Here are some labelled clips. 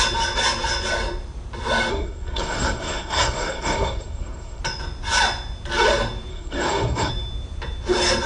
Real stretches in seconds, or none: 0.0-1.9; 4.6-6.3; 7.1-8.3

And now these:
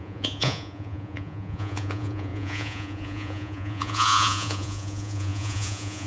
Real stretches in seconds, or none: none

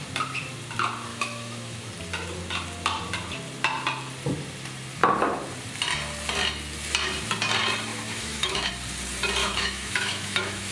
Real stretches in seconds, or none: 0.0-1.1; 1.9-7.9; 8.7-9.4

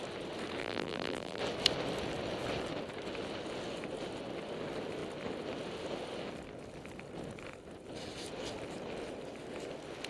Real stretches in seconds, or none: 0.0-0.6; 1.4-10.1

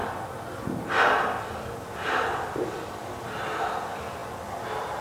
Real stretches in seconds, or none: 0.0-1.6